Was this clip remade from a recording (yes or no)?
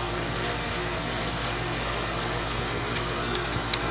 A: yes